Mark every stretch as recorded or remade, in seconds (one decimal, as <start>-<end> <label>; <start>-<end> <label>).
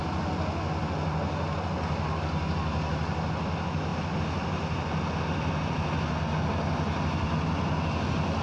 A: 0.0-8.4 recorded